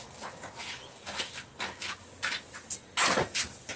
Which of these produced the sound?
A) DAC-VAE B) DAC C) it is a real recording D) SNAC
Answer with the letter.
C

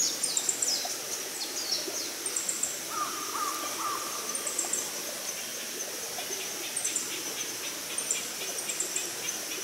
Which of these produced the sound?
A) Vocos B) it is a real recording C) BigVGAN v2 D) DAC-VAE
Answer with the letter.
B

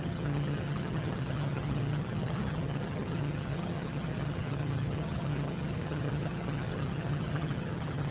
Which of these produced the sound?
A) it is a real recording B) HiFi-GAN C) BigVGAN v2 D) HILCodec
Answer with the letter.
B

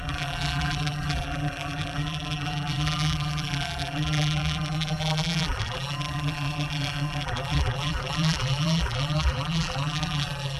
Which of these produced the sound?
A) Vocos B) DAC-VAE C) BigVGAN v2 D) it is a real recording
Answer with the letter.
C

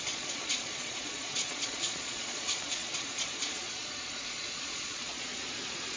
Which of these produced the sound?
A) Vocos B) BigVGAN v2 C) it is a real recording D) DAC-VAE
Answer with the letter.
A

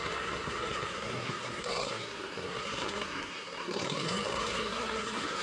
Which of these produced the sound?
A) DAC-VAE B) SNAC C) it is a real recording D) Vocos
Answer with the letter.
B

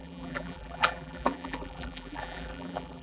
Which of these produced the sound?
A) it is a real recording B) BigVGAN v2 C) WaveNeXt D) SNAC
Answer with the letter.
B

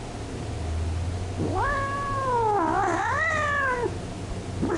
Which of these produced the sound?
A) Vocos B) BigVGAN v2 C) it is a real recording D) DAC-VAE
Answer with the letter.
C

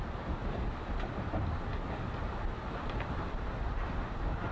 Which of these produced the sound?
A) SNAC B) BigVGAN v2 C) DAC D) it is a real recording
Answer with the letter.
B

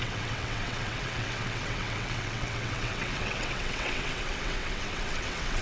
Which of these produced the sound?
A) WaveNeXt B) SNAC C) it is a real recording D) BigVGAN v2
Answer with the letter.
A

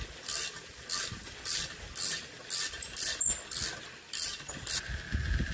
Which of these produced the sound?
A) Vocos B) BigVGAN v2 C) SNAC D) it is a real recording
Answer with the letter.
D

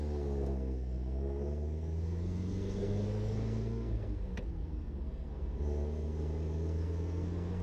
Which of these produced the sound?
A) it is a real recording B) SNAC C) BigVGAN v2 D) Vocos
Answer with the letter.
B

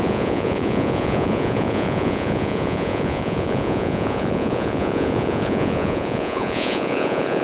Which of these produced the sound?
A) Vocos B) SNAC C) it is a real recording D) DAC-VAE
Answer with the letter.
A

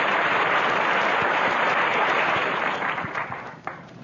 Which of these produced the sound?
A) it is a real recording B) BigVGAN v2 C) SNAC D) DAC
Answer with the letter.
B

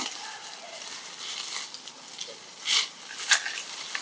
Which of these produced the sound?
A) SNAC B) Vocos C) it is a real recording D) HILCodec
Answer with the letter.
C